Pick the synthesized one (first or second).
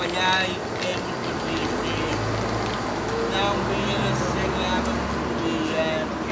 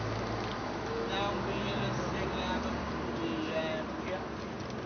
second